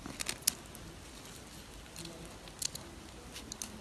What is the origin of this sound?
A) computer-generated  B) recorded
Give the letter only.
B